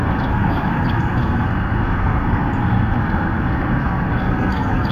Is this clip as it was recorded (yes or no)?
no